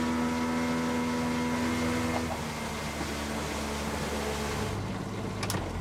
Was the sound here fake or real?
real